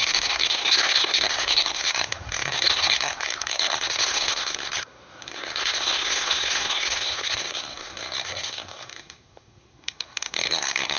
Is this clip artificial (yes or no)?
yes